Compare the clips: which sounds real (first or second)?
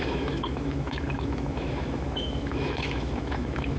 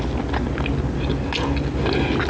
second